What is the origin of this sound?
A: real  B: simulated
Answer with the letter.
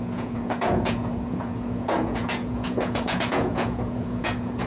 B